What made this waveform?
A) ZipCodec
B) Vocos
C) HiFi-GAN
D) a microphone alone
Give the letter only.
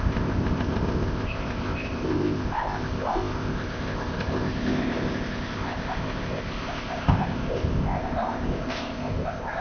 A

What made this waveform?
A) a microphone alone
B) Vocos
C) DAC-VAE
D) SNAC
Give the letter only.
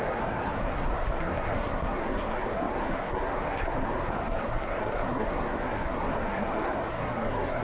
D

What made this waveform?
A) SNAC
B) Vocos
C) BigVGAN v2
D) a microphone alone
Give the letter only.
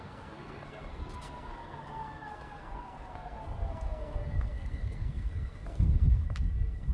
A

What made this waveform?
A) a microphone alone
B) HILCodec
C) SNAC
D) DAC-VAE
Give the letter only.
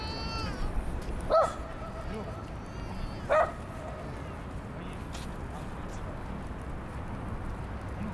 A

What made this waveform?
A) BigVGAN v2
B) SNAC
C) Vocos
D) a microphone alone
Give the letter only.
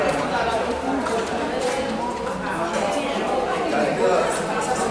D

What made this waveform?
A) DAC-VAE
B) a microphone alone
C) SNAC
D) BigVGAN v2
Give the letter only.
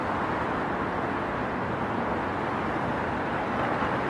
B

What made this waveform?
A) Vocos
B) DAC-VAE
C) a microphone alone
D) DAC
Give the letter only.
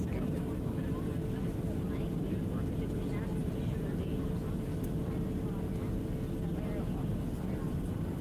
C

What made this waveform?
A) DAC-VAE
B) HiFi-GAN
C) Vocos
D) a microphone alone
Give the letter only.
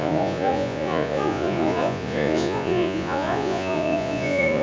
C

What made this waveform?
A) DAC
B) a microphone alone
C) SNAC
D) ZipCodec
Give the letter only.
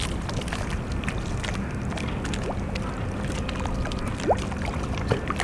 B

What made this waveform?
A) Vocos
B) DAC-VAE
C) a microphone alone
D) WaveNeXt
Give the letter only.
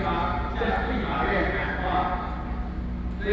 C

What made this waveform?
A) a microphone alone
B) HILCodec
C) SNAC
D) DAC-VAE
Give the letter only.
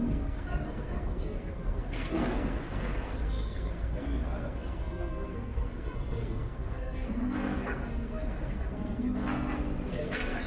C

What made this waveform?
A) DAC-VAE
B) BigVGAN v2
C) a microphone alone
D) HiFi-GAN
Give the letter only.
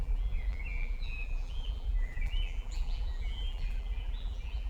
B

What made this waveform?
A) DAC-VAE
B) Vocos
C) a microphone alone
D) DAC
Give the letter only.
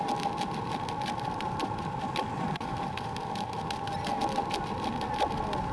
C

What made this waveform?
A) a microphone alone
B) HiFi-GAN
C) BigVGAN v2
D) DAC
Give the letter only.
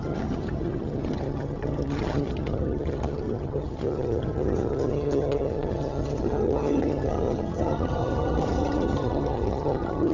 B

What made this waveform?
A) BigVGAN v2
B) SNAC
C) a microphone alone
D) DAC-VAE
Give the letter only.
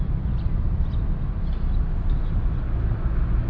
C